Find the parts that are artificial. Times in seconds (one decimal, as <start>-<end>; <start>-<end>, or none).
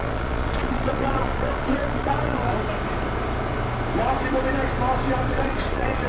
0.0-2.5; 5.3-6.1